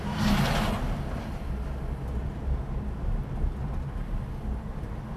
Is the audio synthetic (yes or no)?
no